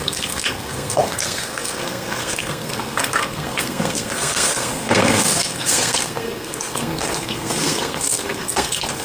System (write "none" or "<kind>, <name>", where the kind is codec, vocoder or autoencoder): codec, SNAC